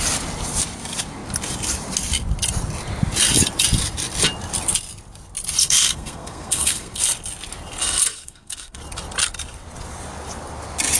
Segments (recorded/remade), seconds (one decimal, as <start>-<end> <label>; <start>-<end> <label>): 0.0-5.6 recorded; 5.6-7.0 remade; 7.0-7.8 recorded; 7.8-8.8 remade; 8.8-11.0 recorded